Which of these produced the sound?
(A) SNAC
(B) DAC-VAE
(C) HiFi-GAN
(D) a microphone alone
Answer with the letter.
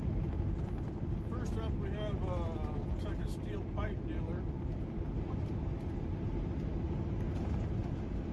D